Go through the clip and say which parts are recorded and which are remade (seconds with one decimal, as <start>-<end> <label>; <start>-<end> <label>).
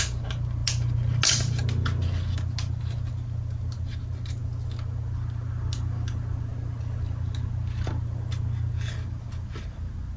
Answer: 0.0-10.2 recorded